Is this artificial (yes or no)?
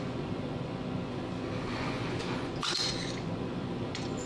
yes